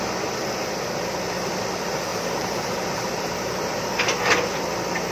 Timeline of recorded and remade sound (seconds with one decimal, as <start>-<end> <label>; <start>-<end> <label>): 0.0-2.1 recorded; 2.1-4.0 remade; 4.0-5.1 recorded